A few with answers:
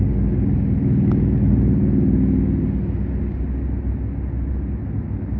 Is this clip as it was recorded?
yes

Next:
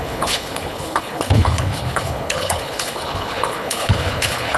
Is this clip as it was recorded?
no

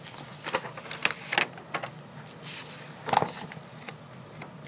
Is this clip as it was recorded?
yes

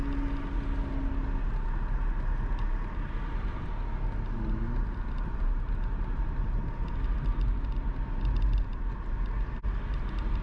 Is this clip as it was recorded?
yes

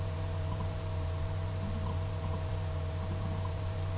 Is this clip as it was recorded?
no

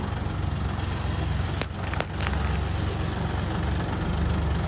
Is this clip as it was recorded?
yes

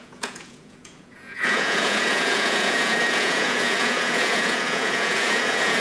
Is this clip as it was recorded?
no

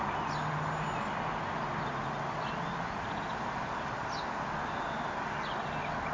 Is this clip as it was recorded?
yes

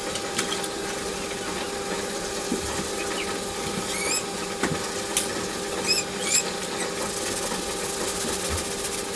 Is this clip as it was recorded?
yes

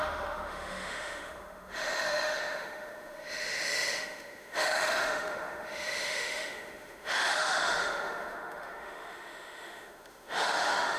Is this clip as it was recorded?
no